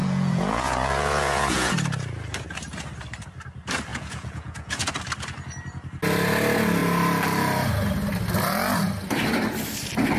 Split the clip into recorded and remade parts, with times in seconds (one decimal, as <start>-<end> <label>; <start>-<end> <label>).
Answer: 0.0-1.7 remade; 1.7-3.9 recorded; 3.9-4.9 remade; 4.9-10.2 recorded